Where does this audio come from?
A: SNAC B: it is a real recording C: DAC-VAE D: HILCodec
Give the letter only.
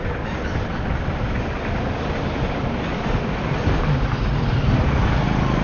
B